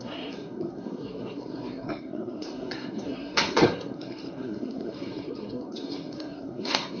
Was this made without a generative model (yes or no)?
no